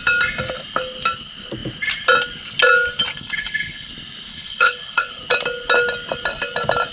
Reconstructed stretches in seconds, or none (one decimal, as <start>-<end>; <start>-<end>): 3.1-3.9; 4.3-5.2